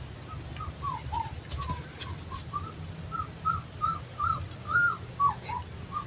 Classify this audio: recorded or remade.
recorded